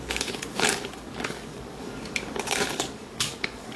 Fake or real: fake